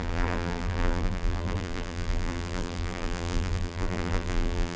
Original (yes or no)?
no